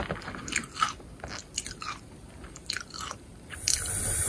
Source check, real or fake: real